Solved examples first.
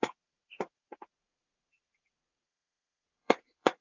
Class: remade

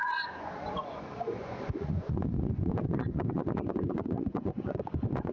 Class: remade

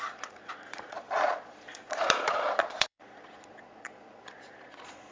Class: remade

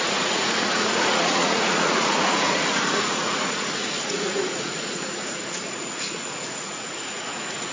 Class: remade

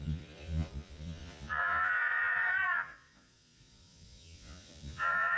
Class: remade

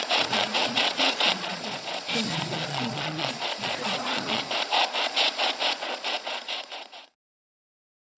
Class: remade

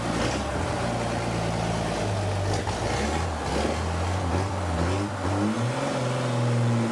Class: recorded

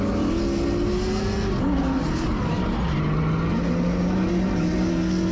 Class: recorded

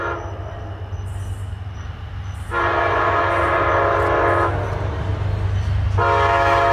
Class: recorded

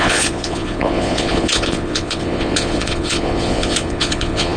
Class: remade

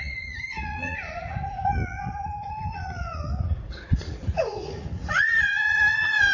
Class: remade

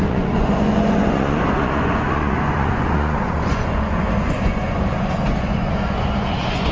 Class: remade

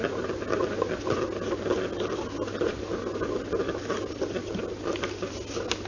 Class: recorded